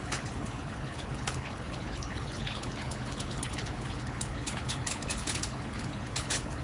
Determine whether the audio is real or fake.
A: fake